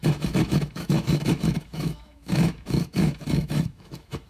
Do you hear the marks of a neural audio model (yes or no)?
yes